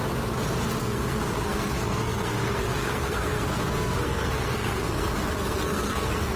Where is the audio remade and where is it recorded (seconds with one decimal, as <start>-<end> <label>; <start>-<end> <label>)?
0.0-0.8 recorded; 0.8-6.4 remade